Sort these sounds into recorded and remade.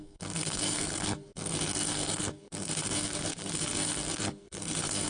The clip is remade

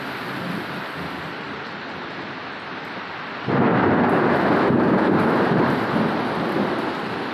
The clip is recorded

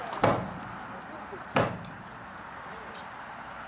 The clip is recorded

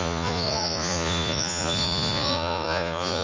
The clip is remade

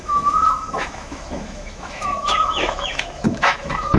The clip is remade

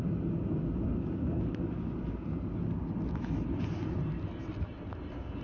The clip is recorded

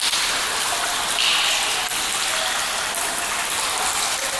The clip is recorded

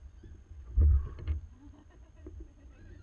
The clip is remade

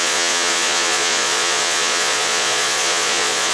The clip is remade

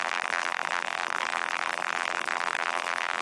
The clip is remade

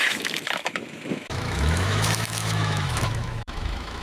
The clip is remade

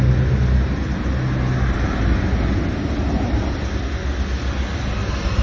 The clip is recorded